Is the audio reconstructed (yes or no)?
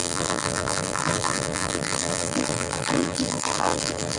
yes